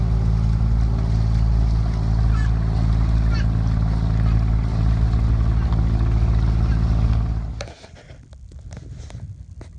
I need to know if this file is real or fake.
real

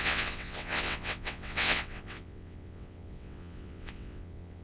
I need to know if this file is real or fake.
fake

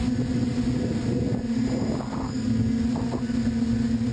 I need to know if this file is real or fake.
real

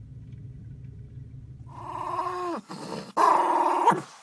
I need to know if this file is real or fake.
real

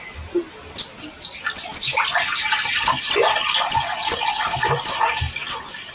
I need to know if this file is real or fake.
real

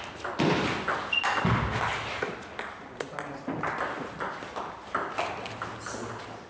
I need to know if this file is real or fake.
real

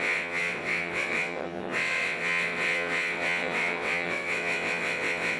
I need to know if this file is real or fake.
fake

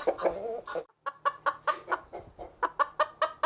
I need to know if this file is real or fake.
real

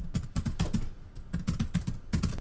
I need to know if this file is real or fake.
real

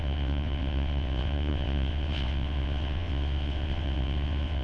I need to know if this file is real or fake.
fake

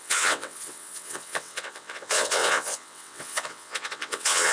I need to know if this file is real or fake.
fake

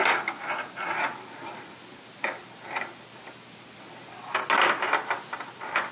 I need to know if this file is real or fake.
real